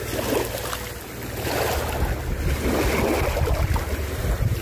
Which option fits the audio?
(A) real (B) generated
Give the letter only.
A